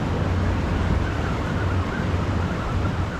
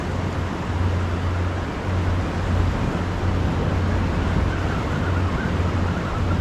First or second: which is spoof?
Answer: first